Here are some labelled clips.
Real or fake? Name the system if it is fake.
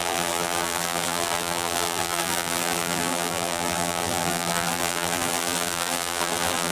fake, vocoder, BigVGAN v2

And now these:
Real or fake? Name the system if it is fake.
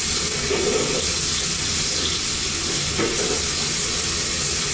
real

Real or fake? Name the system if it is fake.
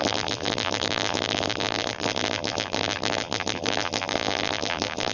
fake, vocoder, BigVGAN v2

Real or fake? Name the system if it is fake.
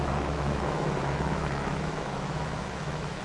fake, autoencoder, DAC-VAE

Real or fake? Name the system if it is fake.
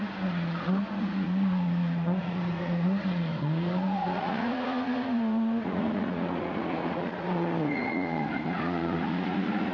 fake, vocoder, Vocos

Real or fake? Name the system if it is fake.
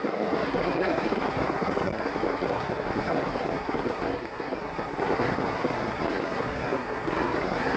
fake, codec, SNAC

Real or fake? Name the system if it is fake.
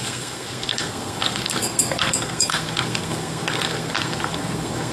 fake, codec, SNAC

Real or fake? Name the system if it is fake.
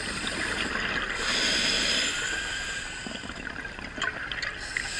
real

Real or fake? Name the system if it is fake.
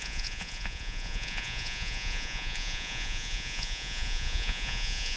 fake, vocoder, Vocos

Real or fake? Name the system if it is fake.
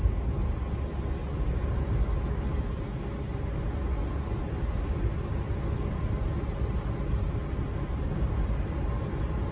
real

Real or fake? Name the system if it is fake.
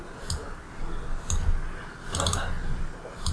real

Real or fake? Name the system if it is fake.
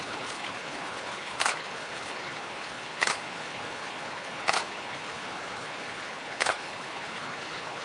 fake, codec, HILCodec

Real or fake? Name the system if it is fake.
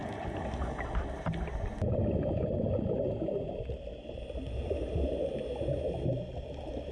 real